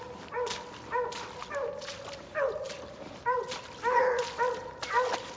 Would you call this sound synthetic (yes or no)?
no